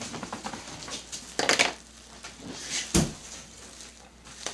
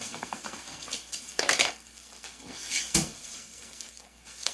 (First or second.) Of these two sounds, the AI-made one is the second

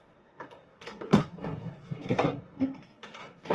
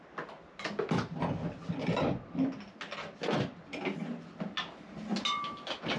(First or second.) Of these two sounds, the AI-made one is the first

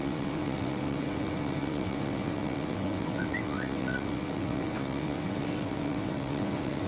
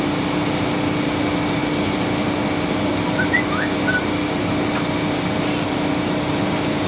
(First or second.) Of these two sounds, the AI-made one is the first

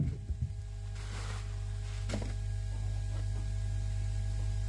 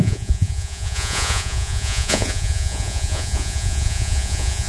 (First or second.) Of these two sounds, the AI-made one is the second